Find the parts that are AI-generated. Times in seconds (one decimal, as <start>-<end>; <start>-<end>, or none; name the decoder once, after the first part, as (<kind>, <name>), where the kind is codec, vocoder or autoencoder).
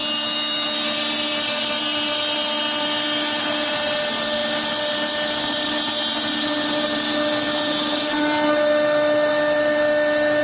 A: none